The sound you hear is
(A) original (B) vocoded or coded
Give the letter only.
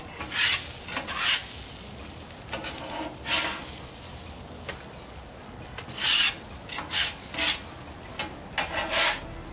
A